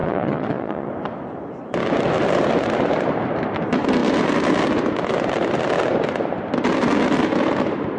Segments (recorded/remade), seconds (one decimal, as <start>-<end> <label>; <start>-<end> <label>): 0.0-0.9 remade; 0.9-8.0 recorded